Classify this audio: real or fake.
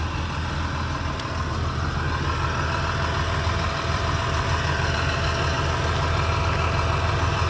real